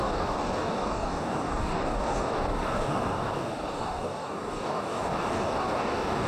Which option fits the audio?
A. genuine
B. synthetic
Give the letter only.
B